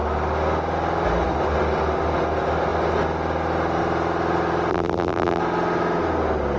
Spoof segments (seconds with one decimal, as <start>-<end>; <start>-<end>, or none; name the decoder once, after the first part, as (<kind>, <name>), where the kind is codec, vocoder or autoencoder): 4.7-5.4 (vocoder, BigVGAN v2)